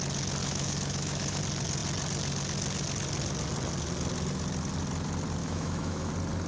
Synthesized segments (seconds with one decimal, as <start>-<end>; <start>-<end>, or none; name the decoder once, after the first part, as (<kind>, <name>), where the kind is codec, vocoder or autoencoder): 0.4-1.4 (autoencoder, DAC-VAE); 5.4-6.1